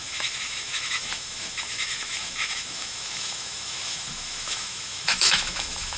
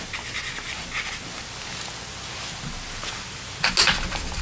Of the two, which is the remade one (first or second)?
first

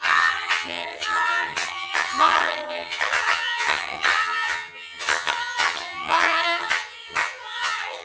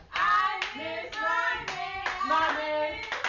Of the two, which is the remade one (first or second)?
first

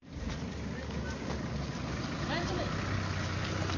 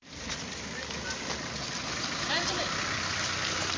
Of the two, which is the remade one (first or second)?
second